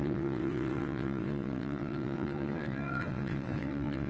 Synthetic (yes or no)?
yes